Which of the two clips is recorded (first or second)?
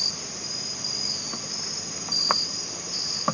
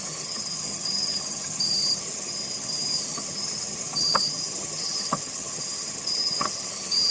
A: first